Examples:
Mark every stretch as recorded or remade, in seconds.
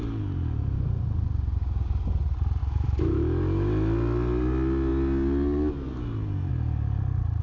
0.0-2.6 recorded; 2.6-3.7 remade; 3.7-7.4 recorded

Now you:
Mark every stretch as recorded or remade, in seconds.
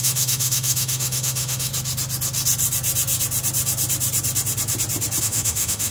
0.0-1.7 remade; 1.7-5.2 recorded; 5.2-5.9 remade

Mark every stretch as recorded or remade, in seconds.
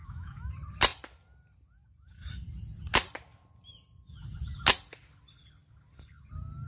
0.0-0.5 remade; 0.5-6.7 recorded